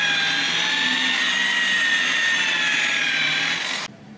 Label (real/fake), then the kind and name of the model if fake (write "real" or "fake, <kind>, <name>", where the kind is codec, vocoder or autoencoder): real